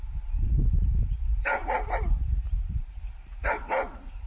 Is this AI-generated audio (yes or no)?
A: yes